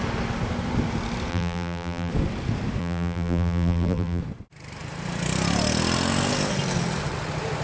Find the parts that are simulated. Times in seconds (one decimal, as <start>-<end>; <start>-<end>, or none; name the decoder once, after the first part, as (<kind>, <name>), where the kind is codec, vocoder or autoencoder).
1.3-2.1 (vocoder, BigVGAN v2); 2.8-4.2